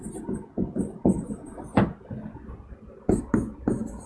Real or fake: real